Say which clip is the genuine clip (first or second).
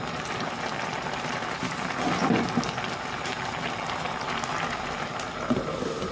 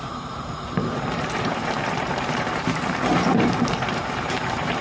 first